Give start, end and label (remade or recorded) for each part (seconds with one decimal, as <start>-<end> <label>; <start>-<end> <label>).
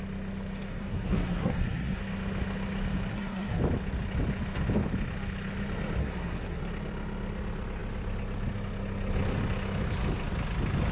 0.0-0.7 recorded; 0.7-2.0 remade; 2.0-3.1 recorded; 3.1-3.6 remade; 3.6-6.0 recorded; 6.0-6.6 remade; 6.6-10.9 recorded